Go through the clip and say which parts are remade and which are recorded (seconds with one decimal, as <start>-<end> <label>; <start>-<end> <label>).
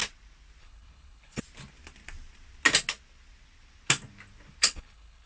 0.0-0.6 recorded; 0.6-1.4 remade; 1.4-4.6 recorded; 4.6-5.3 remade